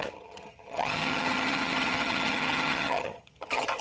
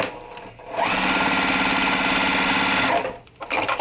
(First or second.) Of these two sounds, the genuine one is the second